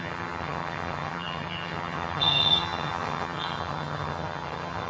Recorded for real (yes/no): no